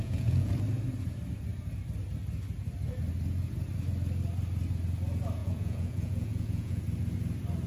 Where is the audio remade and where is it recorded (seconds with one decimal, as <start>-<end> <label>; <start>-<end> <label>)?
0.0-0.5 remade; 0.5-5.4 recorded; 5.4-6.8 remade; 6.8-7.7 recorded